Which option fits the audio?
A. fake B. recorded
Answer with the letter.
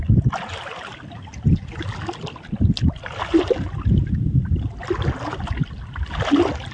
B